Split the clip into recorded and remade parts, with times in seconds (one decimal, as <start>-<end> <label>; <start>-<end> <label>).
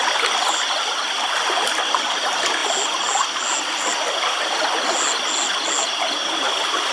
0.0-6.2 recorded; 6.2-6.9 remade